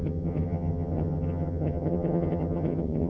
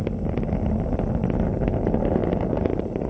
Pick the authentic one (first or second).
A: second